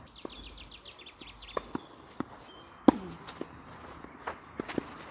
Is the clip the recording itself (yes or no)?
yes